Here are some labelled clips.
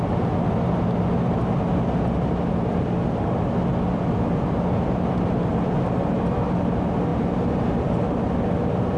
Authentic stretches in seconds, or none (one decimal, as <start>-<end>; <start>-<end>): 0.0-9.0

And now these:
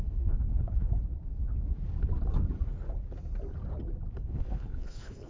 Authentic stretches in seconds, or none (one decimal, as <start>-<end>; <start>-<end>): 1.0-4.2

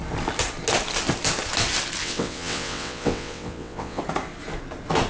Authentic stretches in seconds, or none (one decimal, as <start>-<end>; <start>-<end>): 0.0-2.0; 4.0-5.1

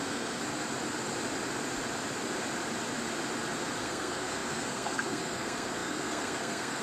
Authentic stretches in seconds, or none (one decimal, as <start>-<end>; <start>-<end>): 0.4-3.8

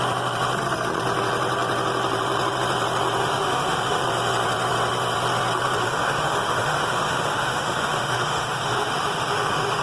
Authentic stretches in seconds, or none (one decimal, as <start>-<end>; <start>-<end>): 0.0-3.2; 4.0-5.8